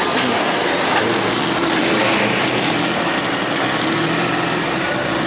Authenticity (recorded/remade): recorded